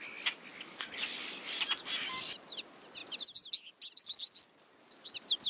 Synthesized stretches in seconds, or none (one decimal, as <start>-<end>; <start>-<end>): none